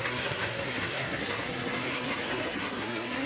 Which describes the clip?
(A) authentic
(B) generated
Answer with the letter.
B